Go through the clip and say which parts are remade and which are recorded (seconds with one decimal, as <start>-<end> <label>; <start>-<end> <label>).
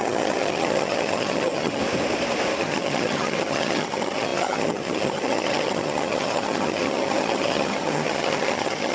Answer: 0.0-1.8 remade; 1.8-2.6 recorded; 2.6-8.9 remade